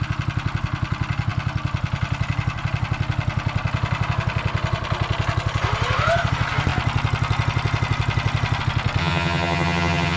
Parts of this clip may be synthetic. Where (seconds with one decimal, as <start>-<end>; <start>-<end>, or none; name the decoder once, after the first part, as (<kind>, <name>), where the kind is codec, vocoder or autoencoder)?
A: 9.0-10.2 (vocoder, HiFi-GAN)

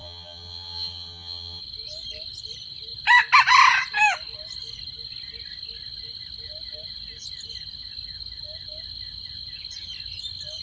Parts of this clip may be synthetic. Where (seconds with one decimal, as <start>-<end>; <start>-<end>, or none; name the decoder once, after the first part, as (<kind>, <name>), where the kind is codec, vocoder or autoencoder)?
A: 0.0-1.6 (vocoder, HiFi-GAN)

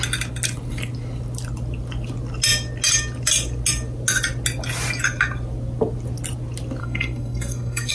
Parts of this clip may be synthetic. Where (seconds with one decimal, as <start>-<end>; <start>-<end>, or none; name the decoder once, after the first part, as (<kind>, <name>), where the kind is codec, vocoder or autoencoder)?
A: 6.8-7.9 (codec, SNAC)

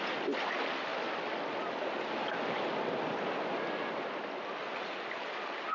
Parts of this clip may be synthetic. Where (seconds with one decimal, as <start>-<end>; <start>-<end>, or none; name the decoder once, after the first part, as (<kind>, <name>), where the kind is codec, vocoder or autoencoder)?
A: none

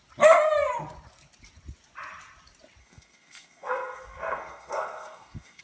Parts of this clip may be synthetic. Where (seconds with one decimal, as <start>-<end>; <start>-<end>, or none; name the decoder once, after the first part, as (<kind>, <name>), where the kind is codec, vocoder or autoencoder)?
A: 2.8-5.6 (codec, SNAC)